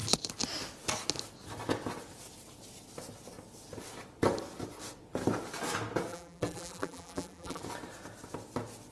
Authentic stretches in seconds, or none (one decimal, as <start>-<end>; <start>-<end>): 0.0-6.1; 7.6-8.9